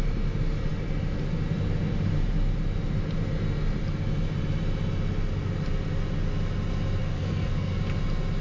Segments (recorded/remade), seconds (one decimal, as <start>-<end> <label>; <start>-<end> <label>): 0.0-7.0 recorded; 7.0-7.8 remade; 7.8-8.4 recorded